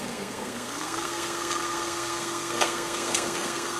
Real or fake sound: fake